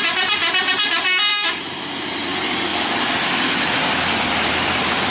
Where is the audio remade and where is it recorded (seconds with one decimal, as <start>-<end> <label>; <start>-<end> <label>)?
0.0-0.4 remade; 0.4-1.3 recorded; 1.3-2.7 remade; 2.7-4.0 recorded; 4.0-5.1 remade